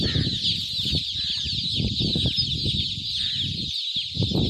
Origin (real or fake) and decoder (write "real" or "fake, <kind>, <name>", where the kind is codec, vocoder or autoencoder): real